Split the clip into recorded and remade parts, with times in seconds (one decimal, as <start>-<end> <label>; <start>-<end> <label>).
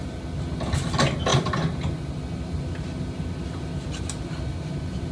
0.0-5.1 recorded